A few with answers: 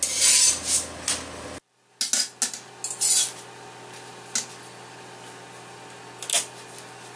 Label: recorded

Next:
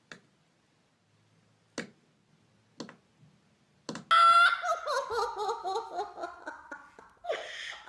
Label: recorded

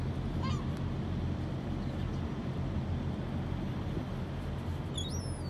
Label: recorded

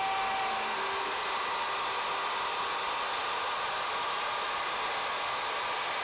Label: recorded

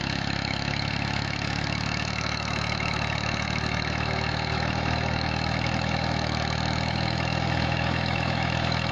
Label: remade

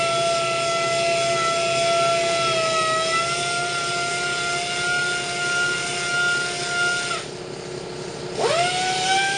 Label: recorded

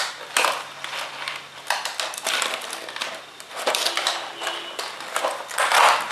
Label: recorded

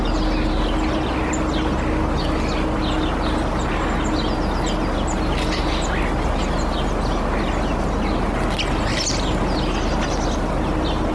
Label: recorded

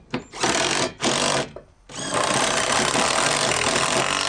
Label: recorded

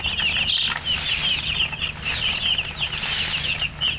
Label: recorded